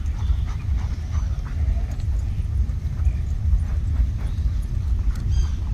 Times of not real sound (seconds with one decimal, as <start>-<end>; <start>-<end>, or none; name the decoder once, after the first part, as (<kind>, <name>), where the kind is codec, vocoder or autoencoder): none